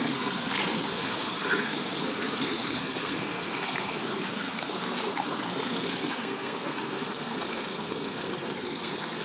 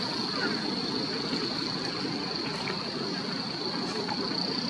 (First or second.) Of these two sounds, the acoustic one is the second